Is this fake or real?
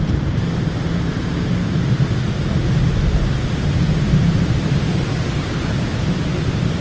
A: fake